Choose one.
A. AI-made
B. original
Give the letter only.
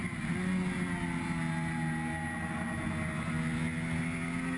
B